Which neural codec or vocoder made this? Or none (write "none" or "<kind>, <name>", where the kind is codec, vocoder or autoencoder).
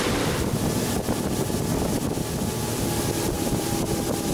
vocoder, BigVGAN v2